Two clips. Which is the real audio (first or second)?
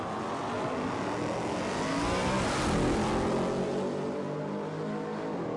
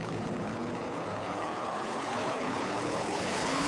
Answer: first